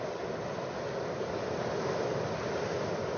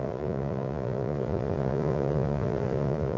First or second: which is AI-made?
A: second